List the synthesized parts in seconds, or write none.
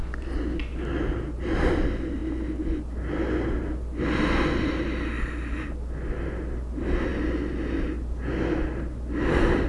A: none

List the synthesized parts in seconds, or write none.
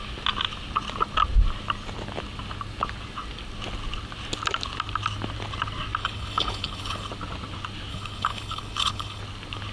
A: 6.0-7.1 (codec, HILCodec); 7.9-9.2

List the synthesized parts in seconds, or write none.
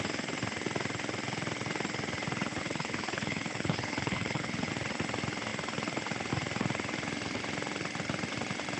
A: 2.5-4.7 (codec, HILCodec)